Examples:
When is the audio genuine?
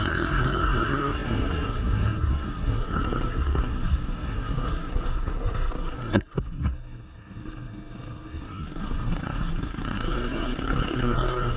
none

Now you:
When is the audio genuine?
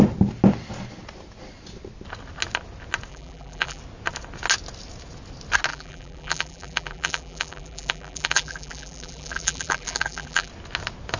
0.0-3.1; 3.8-5.7; 10.5-11.2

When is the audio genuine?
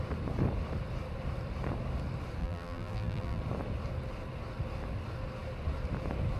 0.0-2.4; 3.4-6.4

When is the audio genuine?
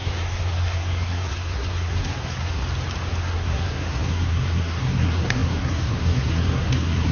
2.6-3.2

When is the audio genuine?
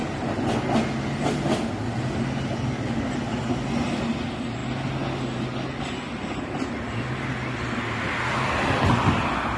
0.0-9.6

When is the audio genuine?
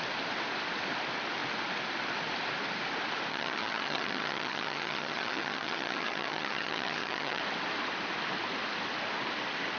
0.0-3.3; 7.4-9.8